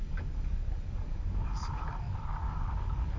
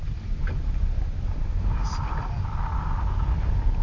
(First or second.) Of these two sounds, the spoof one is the first